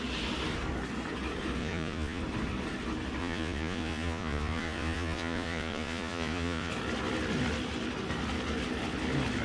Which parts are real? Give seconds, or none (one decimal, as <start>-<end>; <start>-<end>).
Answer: 0.0-1.6; 2.2-3.2; 6.7-9.4